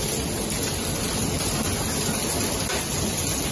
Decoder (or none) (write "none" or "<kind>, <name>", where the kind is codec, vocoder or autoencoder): none